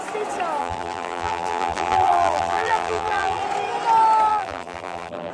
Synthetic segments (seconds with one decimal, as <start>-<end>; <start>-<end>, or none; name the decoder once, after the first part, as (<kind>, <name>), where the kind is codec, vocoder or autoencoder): 0.6-3.4 (vocoder, BigVGAN v2); 4.3-5.3